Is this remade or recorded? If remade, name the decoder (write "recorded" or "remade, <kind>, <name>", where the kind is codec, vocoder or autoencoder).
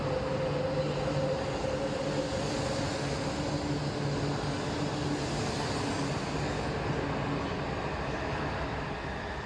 recorded